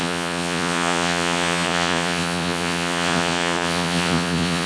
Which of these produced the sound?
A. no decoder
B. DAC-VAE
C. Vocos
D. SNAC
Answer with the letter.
C